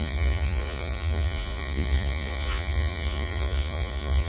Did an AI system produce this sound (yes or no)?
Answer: yes